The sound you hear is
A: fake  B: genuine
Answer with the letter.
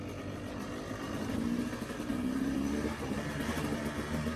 B